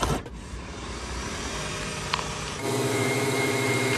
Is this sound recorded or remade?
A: remade